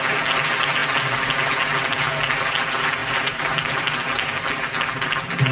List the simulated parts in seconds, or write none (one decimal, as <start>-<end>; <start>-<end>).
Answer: 3.0-3.7

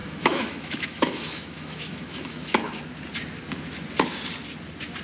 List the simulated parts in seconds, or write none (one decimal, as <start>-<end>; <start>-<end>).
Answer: 0.0-2.8

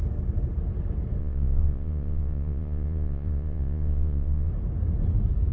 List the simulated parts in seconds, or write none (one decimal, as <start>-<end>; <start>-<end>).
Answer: 1.2-4.5

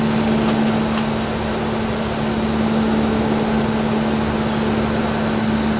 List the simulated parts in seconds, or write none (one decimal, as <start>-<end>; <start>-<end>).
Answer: none

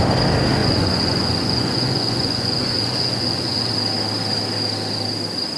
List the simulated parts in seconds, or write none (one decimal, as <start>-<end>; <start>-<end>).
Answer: 0.6-3.7

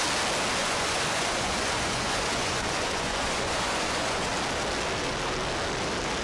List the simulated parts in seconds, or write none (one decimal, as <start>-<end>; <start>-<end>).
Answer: 0.6-4.3